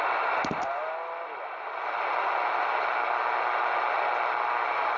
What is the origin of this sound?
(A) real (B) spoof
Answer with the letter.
A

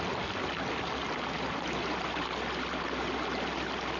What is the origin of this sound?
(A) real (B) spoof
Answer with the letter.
A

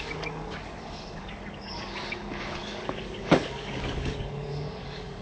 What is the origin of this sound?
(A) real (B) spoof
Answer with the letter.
B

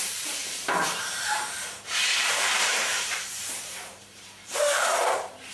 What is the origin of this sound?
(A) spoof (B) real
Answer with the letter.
A